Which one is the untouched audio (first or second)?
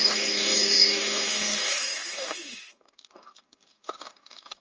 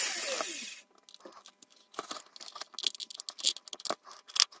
second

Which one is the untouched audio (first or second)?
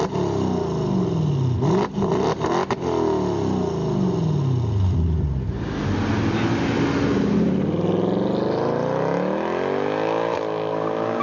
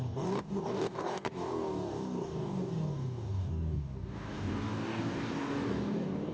first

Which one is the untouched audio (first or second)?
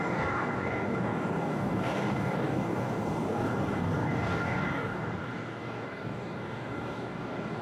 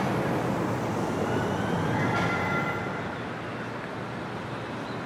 second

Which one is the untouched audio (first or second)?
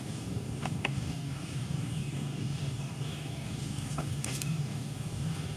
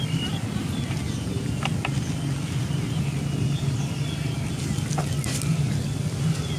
second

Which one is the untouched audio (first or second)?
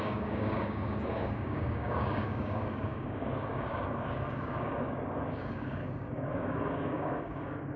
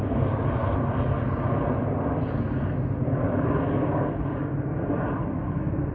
second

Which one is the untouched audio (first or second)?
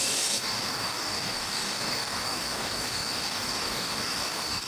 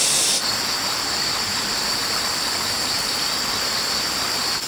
second